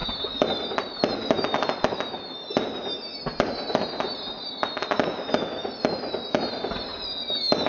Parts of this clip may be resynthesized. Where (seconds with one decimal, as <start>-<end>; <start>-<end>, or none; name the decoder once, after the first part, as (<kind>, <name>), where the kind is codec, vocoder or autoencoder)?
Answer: none